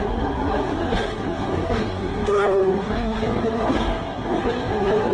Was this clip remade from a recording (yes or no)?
yes